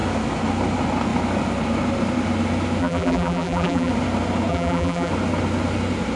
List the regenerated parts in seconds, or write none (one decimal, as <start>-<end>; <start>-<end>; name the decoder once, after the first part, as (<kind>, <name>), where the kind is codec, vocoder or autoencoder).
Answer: 2.8-3.9 (vocoder, BigVGAN v2); 4.5-5.1